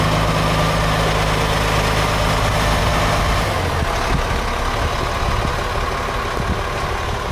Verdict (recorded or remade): recorded